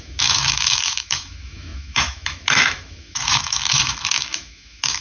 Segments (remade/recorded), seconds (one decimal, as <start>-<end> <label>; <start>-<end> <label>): 0.0-5.0 remade